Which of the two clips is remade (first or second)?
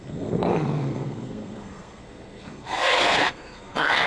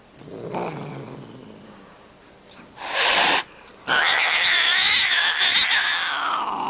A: first